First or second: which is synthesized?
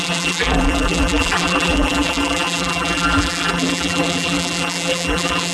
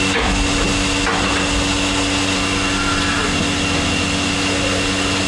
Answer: first